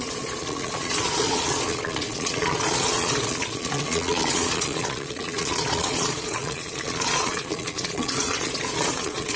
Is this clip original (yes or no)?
no